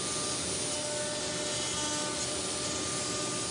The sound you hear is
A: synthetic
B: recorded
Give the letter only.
B